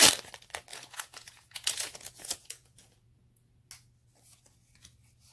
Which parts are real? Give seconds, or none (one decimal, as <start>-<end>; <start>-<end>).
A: 0.0-0.7; 3.7-5.3